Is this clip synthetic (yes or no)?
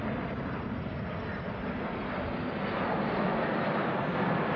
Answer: no